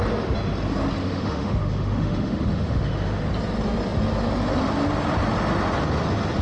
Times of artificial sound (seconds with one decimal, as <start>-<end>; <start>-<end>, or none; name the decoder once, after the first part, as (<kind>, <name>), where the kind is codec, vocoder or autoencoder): 1.0-3.2 (autoencoder, DAC-VAE)